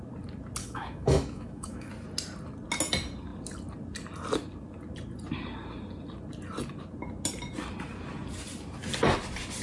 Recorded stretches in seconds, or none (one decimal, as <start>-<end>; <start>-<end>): 0.0-0.6; 1.9-9.6